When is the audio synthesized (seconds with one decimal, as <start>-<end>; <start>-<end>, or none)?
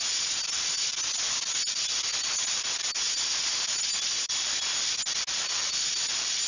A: none